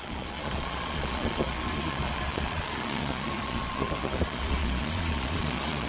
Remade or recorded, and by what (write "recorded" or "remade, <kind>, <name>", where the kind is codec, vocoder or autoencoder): remade, vocoder, Vocos